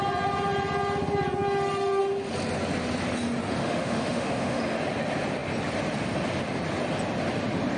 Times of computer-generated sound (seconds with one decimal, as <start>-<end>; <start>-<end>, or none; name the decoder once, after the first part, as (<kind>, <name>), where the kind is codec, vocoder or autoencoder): 3.6-4.6 (autoencoder, DAC-VAE)